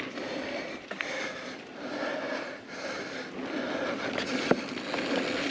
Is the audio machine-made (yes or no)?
no